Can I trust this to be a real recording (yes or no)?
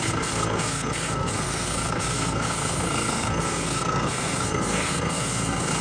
no